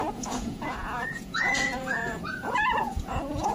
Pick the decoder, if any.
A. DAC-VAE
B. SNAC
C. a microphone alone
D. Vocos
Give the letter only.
D